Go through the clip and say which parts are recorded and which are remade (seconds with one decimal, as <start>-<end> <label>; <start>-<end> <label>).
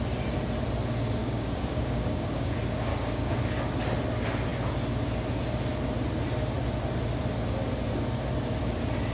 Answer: 0.0-1.2 recorded; 1.2-2.5 remade; 2.5-2.9 recorded; 2.9-3.4 remade; 3.4-9.1 recorded